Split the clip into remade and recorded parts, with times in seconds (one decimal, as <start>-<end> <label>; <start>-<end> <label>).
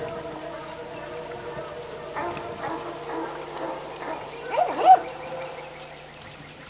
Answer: 0.0-6.7 recorded